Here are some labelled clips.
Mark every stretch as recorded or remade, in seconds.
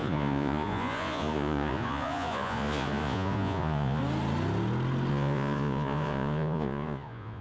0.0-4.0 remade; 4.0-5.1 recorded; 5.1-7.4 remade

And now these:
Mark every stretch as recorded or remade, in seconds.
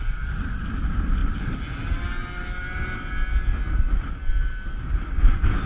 0.0-5.7 recorded